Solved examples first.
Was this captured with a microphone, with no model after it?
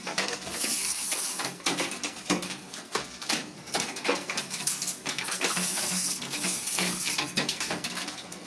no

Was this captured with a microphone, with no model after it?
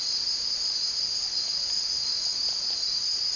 yes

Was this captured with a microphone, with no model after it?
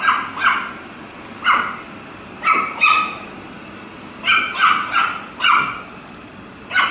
yes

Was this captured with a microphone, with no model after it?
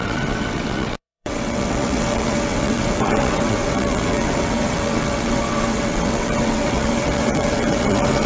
no